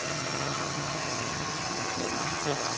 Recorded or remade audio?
remade